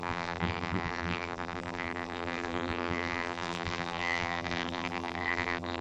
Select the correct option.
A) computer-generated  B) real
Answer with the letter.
A